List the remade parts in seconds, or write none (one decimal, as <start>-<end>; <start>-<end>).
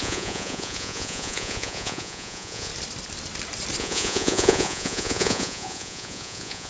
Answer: 0.0-2.7; 3.8-6.7